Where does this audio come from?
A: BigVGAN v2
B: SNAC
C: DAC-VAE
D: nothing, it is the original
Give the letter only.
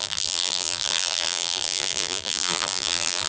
A